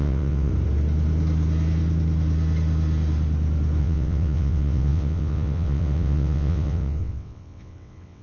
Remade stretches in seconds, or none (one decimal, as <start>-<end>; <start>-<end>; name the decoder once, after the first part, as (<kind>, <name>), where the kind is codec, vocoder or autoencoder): 0.0-0.5 (vocoder, WaveNeXt); 3.8-8.2